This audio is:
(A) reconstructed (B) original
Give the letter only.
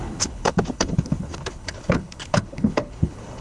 A